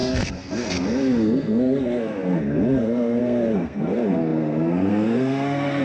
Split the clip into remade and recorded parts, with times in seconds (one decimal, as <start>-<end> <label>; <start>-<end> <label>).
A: 0.0-5.8 remade